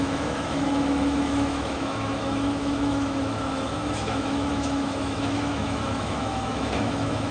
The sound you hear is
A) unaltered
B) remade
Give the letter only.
B